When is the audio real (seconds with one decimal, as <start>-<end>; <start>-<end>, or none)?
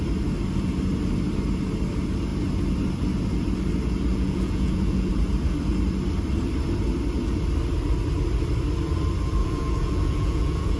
0.0-4.1; 5.1-9.4